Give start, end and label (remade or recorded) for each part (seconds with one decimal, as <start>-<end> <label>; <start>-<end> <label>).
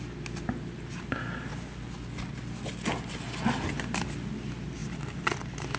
0.0-5.8 recorded